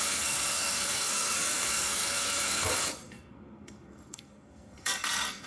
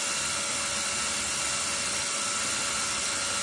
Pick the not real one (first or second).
first